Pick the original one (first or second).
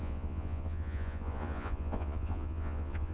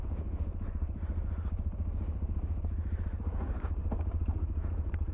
second